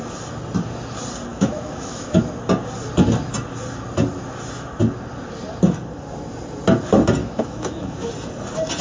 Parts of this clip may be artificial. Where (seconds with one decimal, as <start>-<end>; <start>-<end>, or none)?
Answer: 1.3-2.2; 7.2-8.1